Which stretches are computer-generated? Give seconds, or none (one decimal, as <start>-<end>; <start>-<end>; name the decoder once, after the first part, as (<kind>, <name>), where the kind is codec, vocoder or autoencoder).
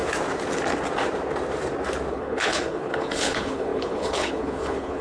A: 2.1-5.0 (codec, HILCodec)